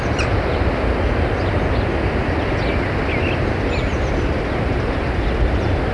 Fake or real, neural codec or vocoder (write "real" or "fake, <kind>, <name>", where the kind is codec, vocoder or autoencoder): real